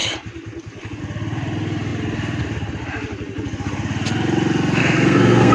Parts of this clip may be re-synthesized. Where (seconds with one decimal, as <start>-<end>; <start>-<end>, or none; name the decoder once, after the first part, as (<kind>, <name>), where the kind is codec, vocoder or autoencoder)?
4.8-5.5 (codec, SNAC)